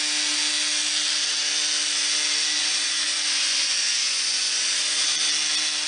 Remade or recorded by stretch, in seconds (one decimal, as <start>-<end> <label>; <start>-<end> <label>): 0.0-2.6 recorded; 2.6-5.3 remade; 5.3-5.9 recorded